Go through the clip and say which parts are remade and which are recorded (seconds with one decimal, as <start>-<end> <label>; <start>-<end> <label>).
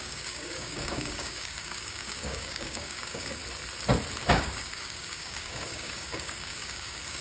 0.0-3.4 remade; 3.4-4.3 recorded; 4.3-7.2 remade